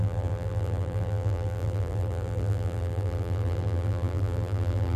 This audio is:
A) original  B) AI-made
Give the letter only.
B